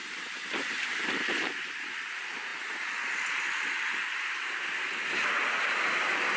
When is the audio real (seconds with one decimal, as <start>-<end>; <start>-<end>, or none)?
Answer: 1.0-6.4